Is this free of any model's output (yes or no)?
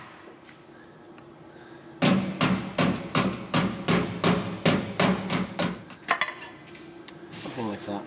yes